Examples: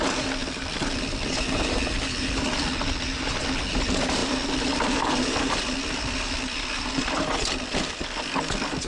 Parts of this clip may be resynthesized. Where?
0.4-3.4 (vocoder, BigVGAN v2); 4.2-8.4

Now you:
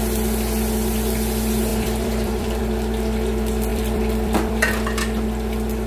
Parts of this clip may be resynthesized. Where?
1.7-2.6 (vocoder, BigVGAN v2); 3.7-4.5

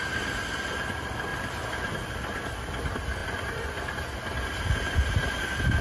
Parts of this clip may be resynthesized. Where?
1.3-2.7 (vocoder, BigVGAN v2)

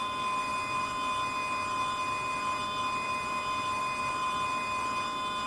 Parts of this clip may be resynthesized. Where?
none

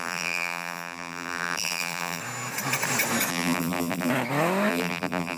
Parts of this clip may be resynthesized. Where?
0.0-2.2 (vocoder, BigVGAN v2); 3.3-4.1; 4.7-5.4

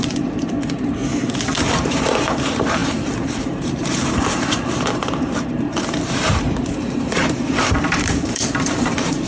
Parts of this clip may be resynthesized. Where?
0.0-1.0 (vocoder, BigVGAN v2); 1.6-9.3